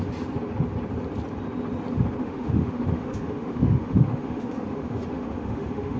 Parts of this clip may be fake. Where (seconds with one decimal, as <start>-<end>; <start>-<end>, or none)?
2.2-6.0